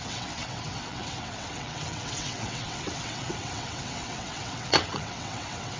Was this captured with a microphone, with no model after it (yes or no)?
no